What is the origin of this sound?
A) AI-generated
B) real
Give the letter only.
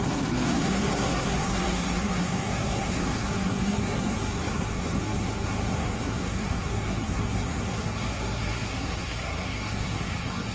A